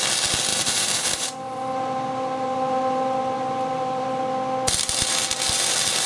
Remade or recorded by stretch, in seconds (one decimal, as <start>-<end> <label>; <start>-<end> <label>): 0.0-0.5 recorded; 0.5-4.2 remade; 4.2-6.1 recorded